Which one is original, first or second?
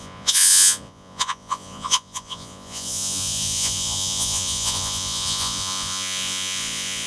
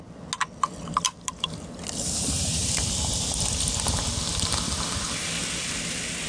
second